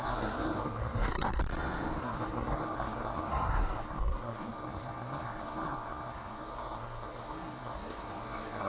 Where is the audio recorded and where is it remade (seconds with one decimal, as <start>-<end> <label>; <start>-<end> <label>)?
0.0-1.4 remade; 1.4-2.0 recorded; 2.0-8.7 remade